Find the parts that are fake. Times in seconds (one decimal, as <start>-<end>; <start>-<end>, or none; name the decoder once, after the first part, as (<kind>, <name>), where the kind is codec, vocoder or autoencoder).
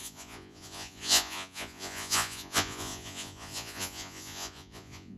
0.0-5.2 (vocoder, Vocos)